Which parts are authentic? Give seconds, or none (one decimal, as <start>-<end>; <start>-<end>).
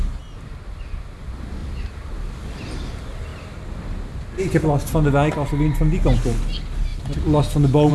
0.0-7.9